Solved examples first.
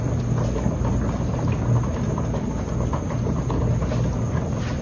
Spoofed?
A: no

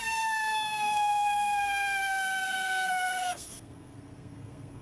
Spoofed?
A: yes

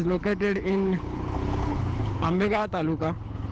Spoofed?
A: yes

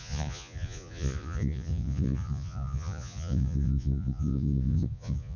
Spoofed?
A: yes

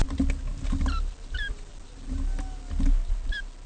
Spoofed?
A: no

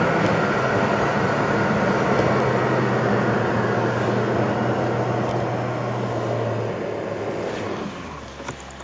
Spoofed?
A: no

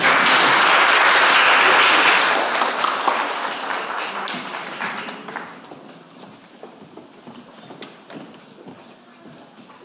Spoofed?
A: no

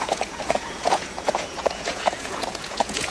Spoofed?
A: yes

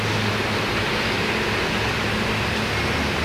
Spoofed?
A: no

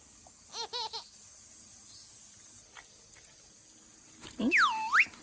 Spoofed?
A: no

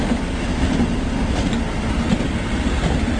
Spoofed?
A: no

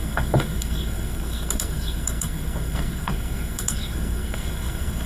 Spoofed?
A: yes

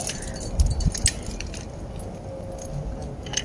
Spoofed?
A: no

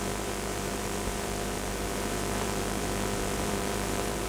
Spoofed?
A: yes